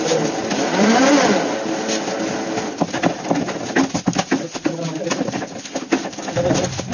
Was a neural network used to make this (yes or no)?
no